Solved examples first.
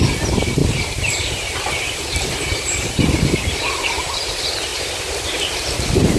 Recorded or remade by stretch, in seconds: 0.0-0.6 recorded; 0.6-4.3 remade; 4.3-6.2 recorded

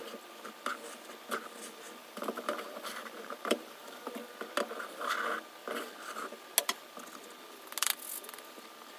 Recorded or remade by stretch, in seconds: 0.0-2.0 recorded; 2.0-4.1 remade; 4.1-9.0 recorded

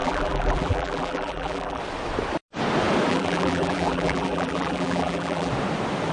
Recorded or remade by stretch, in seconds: 0.0-1.8 remade; 1.8-3.1 recorded; 3.1-5.5 remade; 5.5-6.1 recorded